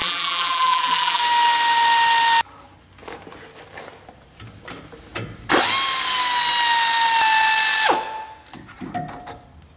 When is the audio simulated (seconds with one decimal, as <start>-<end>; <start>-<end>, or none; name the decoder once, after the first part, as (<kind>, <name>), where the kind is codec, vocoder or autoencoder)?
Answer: 0.0-1.2 (vocoder, BigVGAN v2)